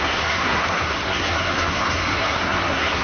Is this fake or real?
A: fake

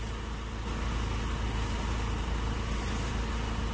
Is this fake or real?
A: real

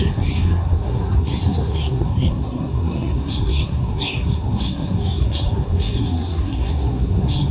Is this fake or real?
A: fake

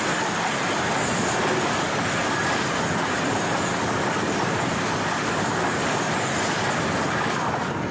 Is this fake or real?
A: real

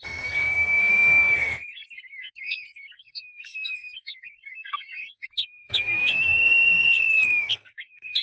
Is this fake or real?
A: fake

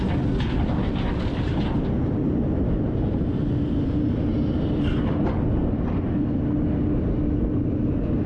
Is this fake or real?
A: real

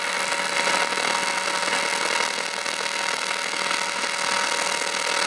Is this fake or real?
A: real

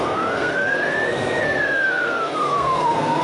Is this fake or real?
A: fake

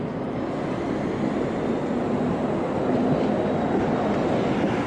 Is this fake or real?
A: real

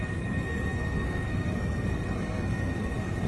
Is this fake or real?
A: fake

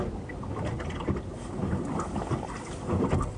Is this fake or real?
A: real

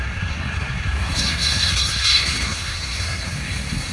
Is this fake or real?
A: fake